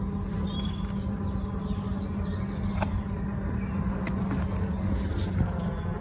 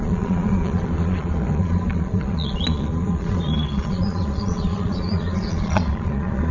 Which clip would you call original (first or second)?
first